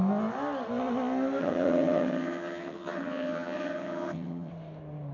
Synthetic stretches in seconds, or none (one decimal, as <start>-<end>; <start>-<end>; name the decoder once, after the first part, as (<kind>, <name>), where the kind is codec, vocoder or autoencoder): 1.4-4.5 (vocoder, HiFi-GAN)

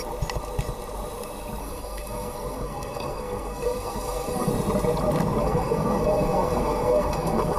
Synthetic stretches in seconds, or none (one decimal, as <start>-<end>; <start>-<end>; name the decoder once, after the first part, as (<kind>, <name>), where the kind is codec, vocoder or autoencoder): 1.6-4.5 (codec, SNAC); 5.4-7.6

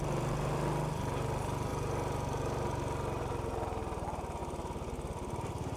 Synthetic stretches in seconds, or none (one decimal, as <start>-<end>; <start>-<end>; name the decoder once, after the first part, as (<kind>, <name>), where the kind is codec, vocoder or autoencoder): none

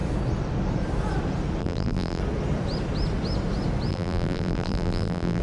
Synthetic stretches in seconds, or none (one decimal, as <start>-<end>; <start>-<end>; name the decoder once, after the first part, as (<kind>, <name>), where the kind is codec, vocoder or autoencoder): 1.6-2.2 (vocoder, BigVGAN v2); 3.9-5.4

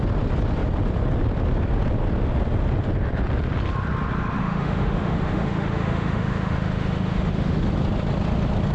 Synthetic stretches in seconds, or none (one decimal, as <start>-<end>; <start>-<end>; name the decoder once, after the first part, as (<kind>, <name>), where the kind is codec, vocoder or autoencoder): 4.4-7.6 (autoencoder, DAC-VAE)

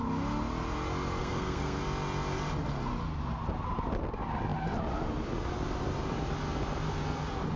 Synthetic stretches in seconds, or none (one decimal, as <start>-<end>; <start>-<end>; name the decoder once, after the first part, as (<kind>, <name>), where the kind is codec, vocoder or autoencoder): 1.2-1.8 (codec, SNAC)

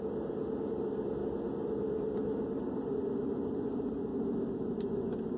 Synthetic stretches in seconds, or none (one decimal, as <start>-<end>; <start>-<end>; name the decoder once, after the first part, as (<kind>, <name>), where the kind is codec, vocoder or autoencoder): none

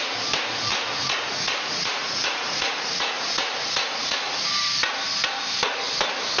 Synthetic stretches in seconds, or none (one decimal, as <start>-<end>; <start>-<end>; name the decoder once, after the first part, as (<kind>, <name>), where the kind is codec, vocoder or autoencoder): 0.7-4.5 (vocoder, Vocos)